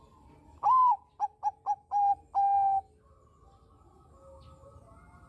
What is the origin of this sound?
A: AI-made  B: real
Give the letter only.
B